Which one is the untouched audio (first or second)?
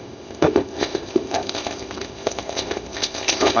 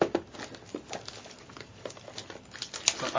second